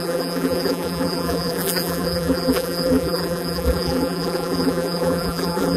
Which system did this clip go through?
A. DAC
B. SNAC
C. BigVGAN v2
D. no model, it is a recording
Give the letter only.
C